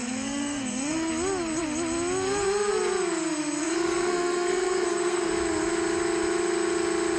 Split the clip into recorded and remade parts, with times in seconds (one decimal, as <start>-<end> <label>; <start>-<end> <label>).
0.0-1.1 remade; 1.1-3.6 recorded; 3.6-5.3 remade; 5.3-7.2 recorded